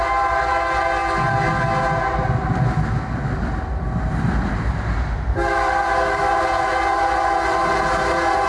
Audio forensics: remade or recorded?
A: recorded